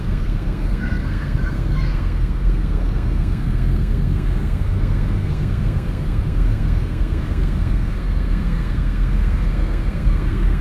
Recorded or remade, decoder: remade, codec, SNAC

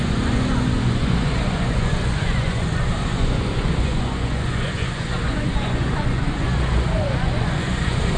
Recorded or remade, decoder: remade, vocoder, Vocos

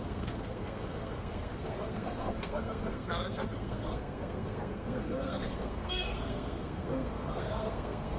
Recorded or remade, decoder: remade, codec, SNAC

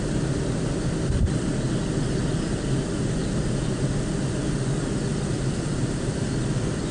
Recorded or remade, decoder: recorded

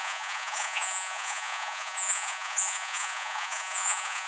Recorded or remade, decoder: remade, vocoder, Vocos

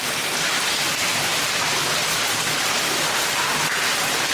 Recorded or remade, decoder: recorded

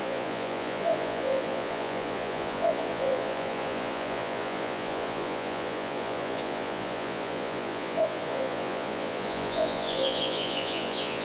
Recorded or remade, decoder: remade, vocoder, Vocos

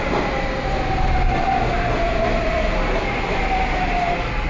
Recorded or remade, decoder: recorded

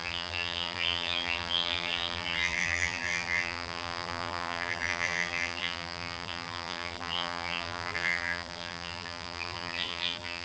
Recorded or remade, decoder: remade, vocoder, BigVGAN v2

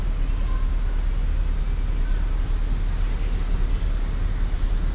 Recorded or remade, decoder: recorded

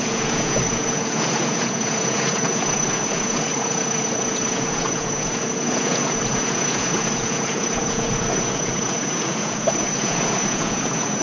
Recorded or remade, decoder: remade, vocoder, Vocos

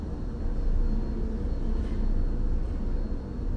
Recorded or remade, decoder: recorded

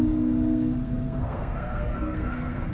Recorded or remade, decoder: remade, codec, SNAC